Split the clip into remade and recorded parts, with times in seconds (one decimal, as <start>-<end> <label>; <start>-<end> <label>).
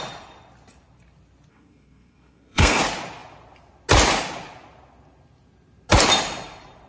0.0-1.5 recorded; 1.5-2.8 remade; 2.8-6.9 recorded